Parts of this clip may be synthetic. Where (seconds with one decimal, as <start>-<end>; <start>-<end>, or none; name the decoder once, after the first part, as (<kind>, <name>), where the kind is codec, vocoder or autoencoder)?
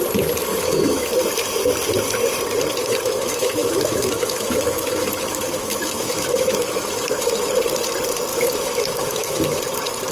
0.5-1.1 (autoencoder, DAC-VAE); 2.8-7.5; 8.3-9.6